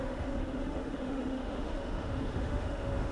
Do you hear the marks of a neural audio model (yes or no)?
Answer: yes